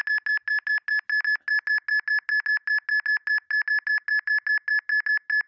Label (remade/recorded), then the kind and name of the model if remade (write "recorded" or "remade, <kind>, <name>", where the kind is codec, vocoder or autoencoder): recorded